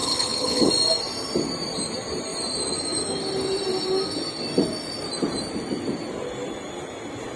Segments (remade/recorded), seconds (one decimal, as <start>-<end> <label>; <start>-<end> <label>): 0.0-0.7 remade; 0.7-7.4 recorded